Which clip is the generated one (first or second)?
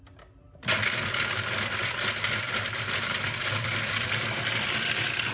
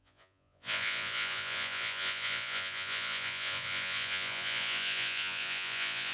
second